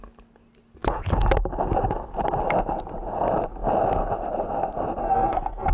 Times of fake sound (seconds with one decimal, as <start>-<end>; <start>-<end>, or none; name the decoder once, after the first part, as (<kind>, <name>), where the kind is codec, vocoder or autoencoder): 5.0-5.7 (codec, SNAC)